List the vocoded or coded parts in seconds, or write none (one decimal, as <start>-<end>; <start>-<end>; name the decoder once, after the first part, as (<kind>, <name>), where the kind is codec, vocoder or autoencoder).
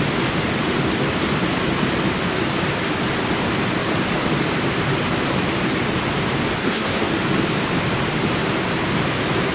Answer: 6.6-7.1 (codec, SNAC)